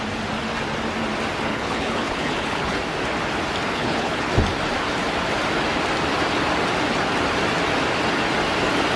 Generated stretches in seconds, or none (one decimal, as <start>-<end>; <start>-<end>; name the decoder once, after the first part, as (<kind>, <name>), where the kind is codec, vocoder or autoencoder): 1.5-2.8 (codec, HILCodec); 3.7-4.3